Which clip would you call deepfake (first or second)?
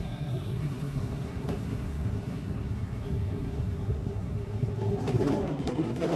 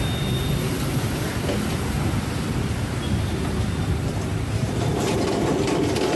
first